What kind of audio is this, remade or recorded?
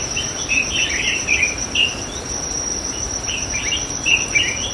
remade